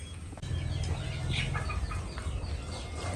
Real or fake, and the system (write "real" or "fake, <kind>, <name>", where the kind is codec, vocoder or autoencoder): real